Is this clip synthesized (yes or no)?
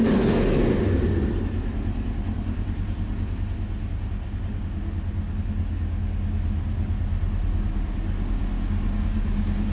no